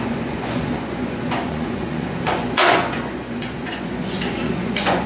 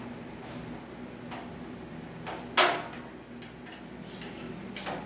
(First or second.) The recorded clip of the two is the second